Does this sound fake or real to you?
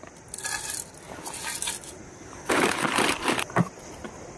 real